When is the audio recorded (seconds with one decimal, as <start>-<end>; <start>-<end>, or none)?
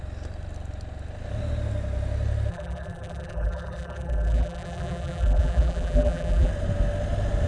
0.0-2.5; 6.5-7.5